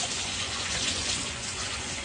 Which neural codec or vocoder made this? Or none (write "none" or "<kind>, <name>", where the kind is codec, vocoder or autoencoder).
vocoder, Vocos